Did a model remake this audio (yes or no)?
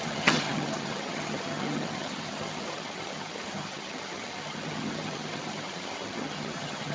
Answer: yes